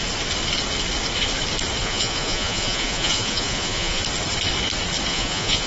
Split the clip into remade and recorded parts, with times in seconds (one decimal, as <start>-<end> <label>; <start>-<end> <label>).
0.0-1.8 recorded; 1.8-4.0 remade; 4.0-5.1 recorded; 5.1-5.7 remade